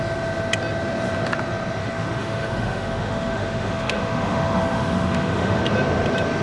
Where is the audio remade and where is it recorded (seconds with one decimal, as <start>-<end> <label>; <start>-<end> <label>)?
0.0-1.8 recorded; 1.8-5.6 remade; 5.6-6.4 recorded